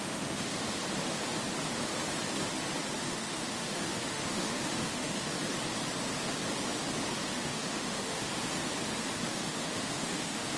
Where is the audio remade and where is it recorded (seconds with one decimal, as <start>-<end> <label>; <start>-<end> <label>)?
0.0-0.5 remade; 0.5-3.0 recorded; 3.0-5.3 remade; 5.3-7.2 recorded; 7.2-8.3 remade; 8.3-9.3 recorded; 9.3-10.6 remade